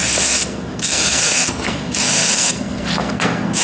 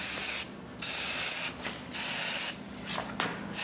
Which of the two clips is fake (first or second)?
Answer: first